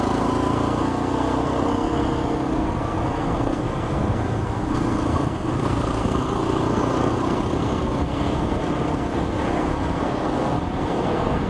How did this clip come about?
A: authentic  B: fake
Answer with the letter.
B